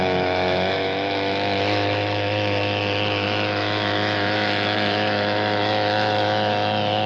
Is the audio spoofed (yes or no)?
yes